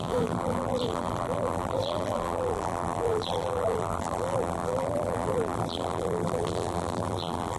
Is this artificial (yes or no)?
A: yes